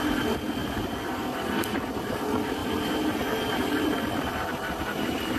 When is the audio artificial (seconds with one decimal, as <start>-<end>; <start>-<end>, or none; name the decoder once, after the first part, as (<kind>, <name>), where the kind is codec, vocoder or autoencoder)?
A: 0.6-1.2 (vocoder, BigVGAN v2); 2.6-4.7